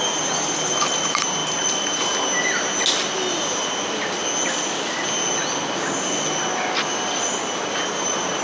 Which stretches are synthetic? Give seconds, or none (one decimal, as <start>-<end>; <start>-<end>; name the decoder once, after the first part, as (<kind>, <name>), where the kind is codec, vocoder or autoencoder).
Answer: none